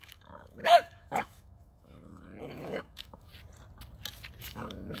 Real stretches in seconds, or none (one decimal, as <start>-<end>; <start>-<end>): 3.3-4.4